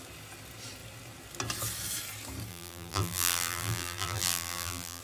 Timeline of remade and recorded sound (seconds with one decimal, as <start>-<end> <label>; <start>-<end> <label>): 0.0-2.5 recorded; 2.5-5.0 remade